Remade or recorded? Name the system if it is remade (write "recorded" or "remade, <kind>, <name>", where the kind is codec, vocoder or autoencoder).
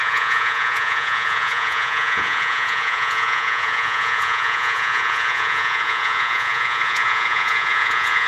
remade, vocoder, Vocos